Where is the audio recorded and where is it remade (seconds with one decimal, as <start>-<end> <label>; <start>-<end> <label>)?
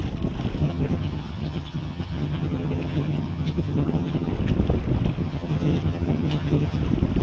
0.0-0.6 recorded; 0.6-4.3 remade; 4.3-5.2 recorded; 5.2-6.8 remade; 6.8-7.2 recorded